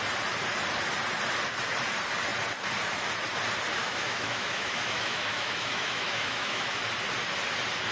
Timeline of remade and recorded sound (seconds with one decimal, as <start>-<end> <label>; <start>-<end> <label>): 0.0-3.8 recorded; 3.8-6.8 remade; 6.8-7.9 recorded